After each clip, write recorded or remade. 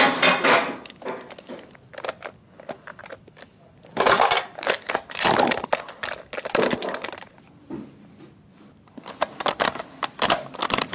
recorded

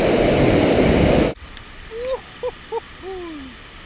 recorded